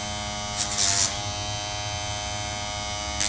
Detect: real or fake real